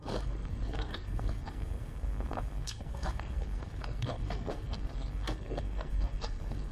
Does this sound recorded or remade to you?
remade